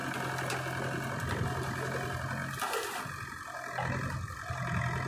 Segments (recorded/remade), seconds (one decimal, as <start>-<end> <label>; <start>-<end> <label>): 0.0-5.1 recorded

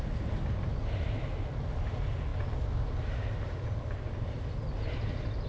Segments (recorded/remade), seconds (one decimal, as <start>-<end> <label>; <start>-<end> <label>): 0.0-5.5 recorded